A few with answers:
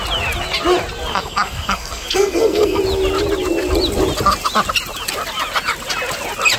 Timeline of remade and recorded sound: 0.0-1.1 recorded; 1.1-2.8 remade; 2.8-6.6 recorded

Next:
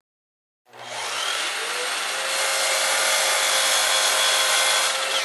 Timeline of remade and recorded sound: 0.0-5.2 recorded

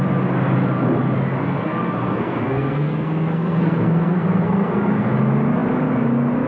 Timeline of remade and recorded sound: 0.0-1.4 recorded; 1.4-5.1 remade; 5.1-6.5 recorded

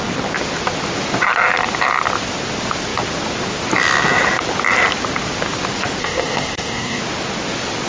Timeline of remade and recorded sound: 0.0-6.0 recorded; 6.0-7.0 remade; 7.0-7.9 recorded